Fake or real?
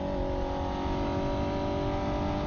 real